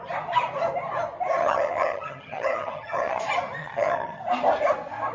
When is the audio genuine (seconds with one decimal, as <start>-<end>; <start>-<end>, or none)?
0.0-1.4; 3.2-3.6; 4.2-5.1